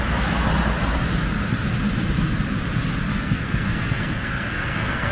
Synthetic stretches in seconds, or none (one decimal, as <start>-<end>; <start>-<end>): 3.1-5.1